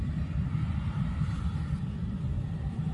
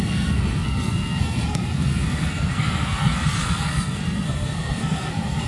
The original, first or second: first